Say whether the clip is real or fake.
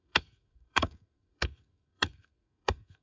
fake